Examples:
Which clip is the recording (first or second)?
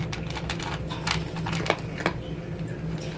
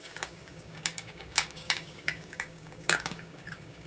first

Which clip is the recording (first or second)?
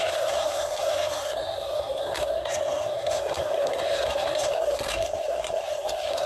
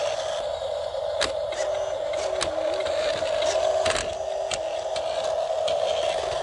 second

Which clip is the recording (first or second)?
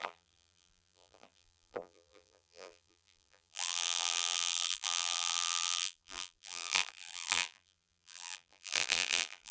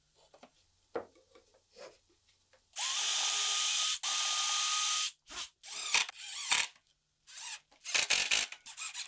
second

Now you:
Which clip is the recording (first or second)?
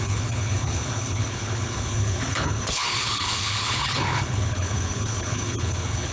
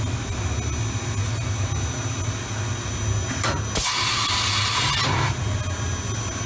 second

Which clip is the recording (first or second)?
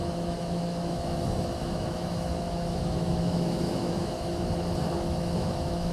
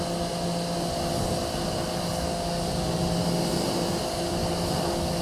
second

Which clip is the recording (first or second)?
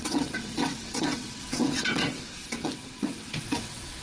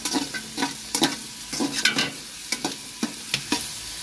second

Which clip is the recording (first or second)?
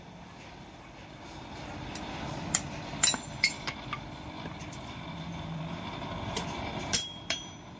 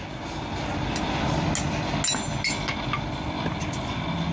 second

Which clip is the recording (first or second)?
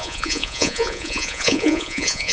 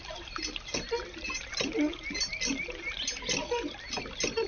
second